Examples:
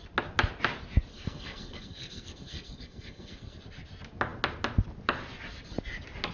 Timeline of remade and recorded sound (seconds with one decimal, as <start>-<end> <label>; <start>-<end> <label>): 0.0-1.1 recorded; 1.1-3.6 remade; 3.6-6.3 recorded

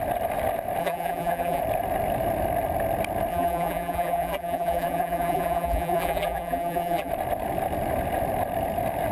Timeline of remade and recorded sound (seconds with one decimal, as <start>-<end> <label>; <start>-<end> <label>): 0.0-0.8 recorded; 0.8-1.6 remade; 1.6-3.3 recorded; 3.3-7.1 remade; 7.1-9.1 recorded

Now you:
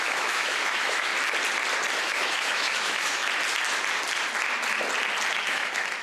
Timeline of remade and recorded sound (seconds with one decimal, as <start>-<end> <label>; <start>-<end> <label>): 0.0-1.1 remade; 1.1-2.0 recorded; 2.0-3.2 remade; 3.2-5.4 recorded; 5.4-6.0 remade